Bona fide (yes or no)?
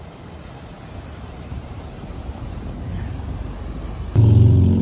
yes